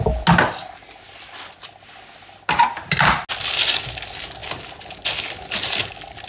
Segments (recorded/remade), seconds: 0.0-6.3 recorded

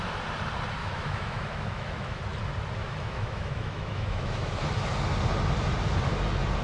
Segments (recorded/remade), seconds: 0.0-0.8 recorded; 0.8-2.2 remade; 2.2-2.8 recorded; 2.8-4.5 remade; 4.5-6.6 recorded

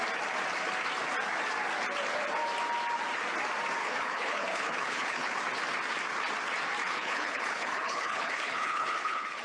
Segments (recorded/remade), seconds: 0.0-3.8 recorded; 3.8-5.4 remade; 5.4-6.8 recorded; 6.8-9.4 remade

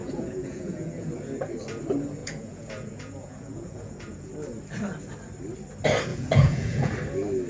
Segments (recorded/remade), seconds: 0.0-1.1 remade; 1.1-2.2 recorded; 2.2-4.3 remade; 4.3-6.1 recorded; 6.1-6.9 remade; 6.9-7.5 recorded

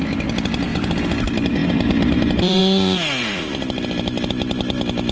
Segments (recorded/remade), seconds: 0.0-1.6 recorded; 1.6-2.6 remade; 2.6-3.2 recorded; 3.2-4.3 remade; 4.3-5.1 recorded